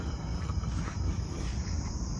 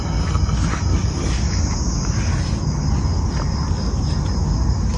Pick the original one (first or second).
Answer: second